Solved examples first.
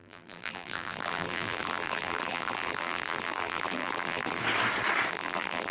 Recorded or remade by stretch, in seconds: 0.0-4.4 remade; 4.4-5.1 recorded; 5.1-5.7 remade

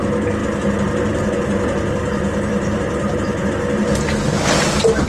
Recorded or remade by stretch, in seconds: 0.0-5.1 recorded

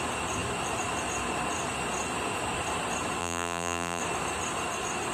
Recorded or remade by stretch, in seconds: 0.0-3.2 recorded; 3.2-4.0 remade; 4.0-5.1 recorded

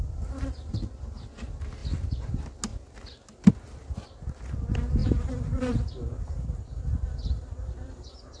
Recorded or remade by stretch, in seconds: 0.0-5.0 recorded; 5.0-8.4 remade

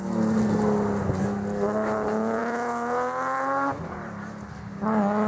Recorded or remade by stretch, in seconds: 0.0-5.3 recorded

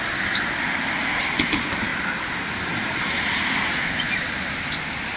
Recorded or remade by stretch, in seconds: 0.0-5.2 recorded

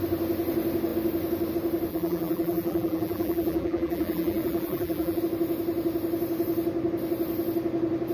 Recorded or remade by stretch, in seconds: 0.0-1.9 recorded; 1.9-5.2 remade; 5.2-8.1 recorded